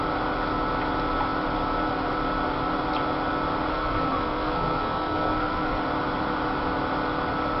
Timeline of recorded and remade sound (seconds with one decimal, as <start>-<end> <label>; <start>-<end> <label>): 0.0-3.7 recorded; 3.7-5.8 remade; 5.8-7.6 recorded